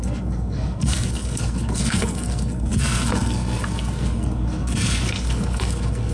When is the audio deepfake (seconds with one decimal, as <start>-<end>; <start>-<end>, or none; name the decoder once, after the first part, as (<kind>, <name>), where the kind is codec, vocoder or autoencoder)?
0.0-6.1 (codec, SNAC)